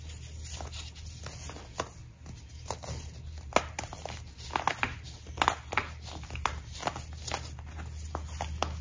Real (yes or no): yes